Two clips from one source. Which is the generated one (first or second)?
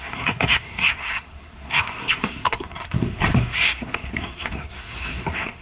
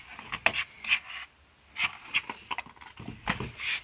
first